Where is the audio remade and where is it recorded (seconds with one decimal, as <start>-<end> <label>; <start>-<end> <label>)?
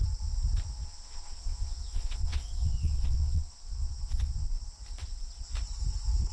0.0-0.7 recorded; 0.7-4.5 remade; 4.5-6.3 recorded